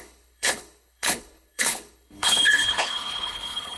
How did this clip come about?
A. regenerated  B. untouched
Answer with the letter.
A